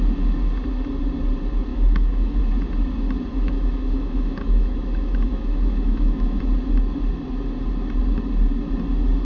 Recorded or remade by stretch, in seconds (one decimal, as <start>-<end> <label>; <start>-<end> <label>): 0.0-1.7 recorded; 1.7-2.4 remade; 2.4-3.3 recorded; 3.3-6.4 remade; 6.4-9.2 recorded